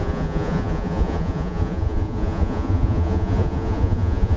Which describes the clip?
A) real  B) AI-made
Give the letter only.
B